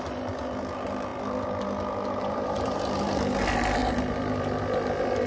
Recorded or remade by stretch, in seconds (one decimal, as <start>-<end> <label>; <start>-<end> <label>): 0.0-1.1 recorded; 1.1-3.4 remade; 3.4-3.8 recorded; 3.8-4.6 remade; 4.6-5.3 recorded